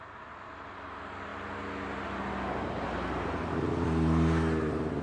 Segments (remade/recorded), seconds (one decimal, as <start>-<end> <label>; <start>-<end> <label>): 0.0-5.0 recorded